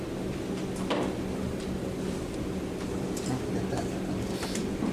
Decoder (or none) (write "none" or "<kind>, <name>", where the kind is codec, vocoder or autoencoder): none